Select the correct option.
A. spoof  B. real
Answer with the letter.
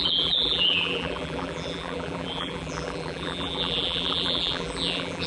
A